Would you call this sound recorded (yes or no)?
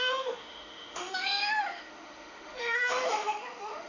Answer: no